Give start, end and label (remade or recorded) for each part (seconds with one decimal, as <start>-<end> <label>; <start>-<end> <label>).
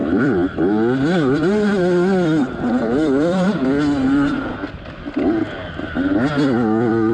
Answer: 0.0-0.6 remade; 0.6-2.4 recorded; 2.4-3.5 remade; 3.5-7.1 recorded